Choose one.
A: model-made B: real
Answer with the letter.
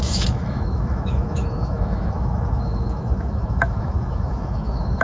A